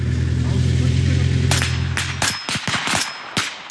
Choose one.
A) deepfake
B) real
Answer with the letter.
B